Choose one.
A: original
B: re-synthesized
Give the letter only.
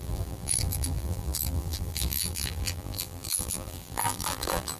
B